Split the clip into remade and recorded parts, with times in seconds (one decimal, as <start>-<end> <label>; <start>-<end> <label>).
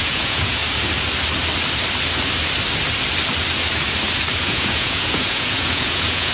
0.0-0.6 remade; 0.6-4.4 recorded; 4.4-6.3 remade